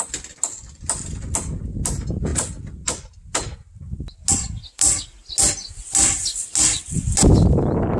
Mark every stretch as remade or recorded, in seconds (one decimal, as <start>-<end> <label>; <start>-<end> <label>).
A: 0.0-8.0 recorded